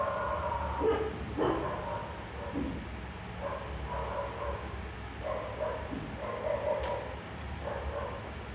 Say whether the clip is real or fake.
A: real